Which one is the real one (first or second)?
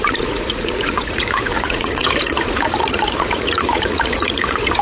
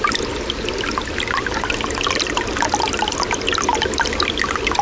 second